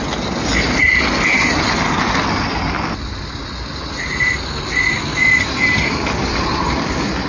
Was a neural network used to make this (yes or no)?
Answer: no